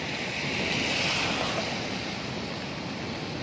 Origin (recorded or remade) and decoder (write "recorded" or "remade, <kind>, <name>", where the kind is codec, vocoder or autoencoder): recorded